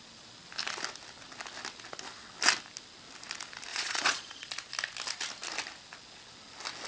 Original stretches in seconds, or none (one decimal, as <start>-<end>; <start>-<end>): 0.0-3.7; 4.5-6.9